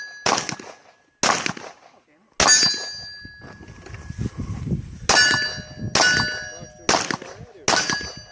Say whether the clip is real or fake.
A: real